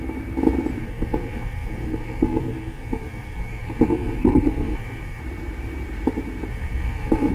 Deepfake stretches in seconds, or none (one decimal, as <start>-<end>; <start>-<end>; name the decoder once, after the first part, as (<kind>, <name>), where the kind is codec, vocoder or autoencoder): 0.8-5.2 (codec, SNAC); 6.5-7.3